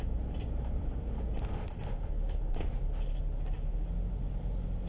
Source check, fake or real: real